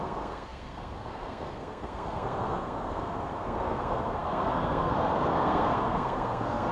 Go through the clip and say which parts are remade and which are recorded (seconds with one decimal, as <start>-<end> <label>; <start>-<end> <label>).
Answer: 0.0-6.7 remade